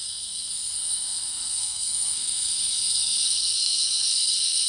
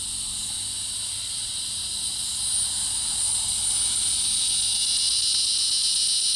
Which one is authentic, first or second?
second